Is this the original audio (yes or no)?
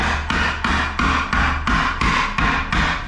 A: yes